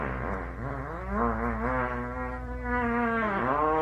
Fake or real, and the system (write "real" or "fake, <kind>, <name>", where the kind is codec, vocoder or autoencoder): real